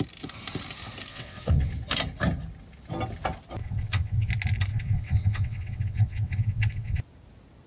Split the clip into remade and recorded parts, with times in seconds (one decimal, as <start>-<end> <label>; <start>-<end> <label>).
0.0-1.1 recorded; 1.1-1.7 remade; 1.7-3.6 recorded; 3.6-4.3 remade; 4.3-4.7 recorded; 4.7-7.0 remade; 7.0-7.7 recorded